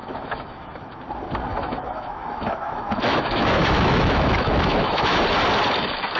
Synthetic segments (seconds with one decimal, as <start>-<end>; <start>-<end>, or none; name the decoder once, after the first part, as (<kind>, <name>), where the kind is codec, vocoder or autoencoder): 0.0-1.0 (autoencoder, DAC-VAE); 1.5-5.2